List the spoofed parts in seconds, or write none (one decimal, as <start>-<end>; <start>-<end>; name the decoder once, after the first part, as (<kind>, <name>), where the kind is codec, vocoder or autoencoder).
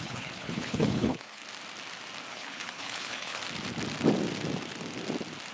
0.0-1.4 (codec, HILCodec); 2.3-3.4